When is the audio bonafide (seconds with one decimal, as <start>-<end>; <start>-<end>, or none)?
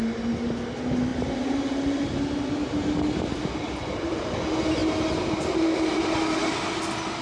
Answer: 0.0-7.2